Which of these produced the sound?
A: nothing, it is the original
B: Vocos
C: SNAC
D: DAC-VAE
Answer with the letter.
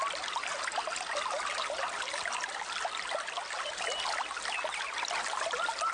A